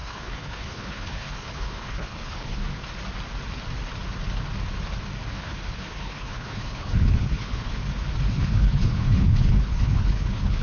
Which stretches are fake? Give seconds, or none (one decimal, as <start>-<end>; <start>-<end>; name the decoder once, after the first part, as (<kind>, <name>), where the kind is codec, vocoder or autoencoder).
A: 0.0-2.6 (codec, HILCodec); 5.3-7.8; 8.3-10.6